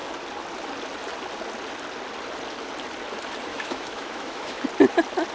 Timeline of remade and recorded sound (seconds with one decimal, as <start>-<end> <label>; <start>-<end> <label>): 0.0-3.5 recorded; 3.5-4.6 remade; 4.6-5.3 recorded